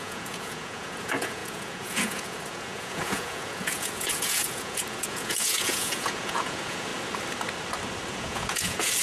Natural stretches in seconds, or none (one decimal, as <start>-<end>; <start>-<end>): 6.9-8.1